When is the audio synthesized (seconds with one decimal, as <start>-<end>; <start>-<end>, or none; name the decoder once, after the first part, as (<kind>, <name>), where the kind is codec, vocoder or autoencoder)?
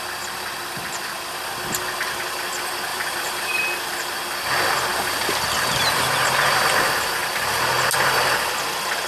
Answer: 2.9-3.6 (vocoder, BigVGAN v2); 4.9-6.7